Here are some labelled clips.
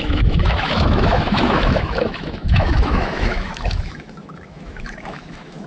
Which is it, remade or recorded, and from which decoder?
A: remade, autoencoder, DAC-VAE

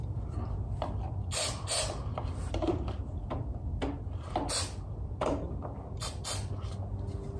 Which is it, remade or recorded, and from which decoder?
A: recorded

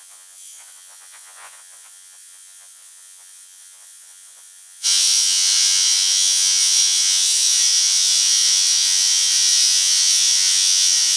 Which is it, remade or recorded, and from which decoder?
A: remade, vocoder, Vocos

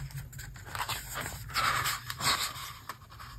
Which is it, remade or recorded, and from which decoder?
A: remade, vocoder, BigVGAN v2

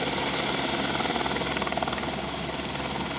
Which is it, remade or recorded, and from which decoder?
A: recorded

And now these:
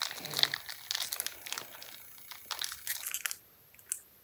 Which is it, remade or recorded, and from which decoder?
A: recorded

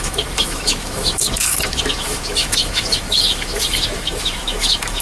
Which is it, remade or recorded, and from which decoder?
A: remade, autoencoder, DAC-VAE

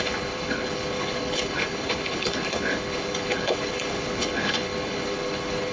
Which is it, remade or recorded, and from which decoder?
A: remade, codec, HILCodec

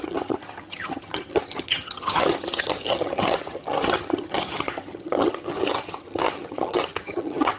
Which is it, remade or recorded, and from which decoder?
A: remade, vocoder, HiFi-GAN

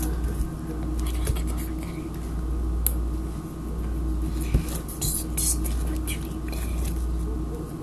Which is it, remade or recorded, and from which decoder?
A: recorded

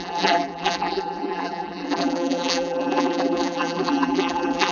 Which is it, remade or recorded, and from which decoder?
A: remade, vocoder, BigVGAN v2